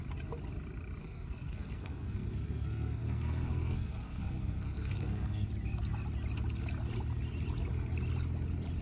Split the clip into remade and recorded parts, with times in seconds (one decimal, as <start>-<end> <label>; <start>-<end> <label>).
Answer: 0.0-1.0 recorded; 1.0-5.5 remade; 5.5-8.8 recorded